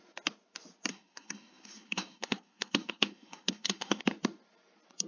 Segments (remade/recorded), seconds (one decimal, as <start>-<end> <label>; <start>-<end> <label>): 0.0-0.9 recorded; 0.9-4.0 remade; 4.0-5.1 recorded